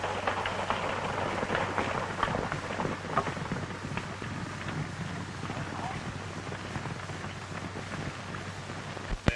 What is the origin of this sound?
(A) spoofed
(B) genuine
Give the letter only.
B